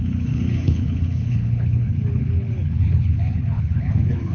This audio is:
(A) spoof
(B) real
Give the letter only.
A